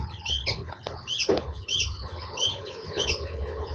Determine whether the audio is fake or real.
fake